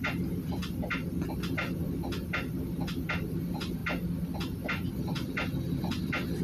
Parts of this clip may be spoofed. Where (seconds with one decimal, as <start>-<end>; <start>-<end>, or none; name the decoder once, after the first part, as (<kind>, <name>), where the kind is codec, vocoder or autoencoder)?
0.0-0.6 (vocoder, BigVGAN v2); 3.3-3.8; 4.9-6.4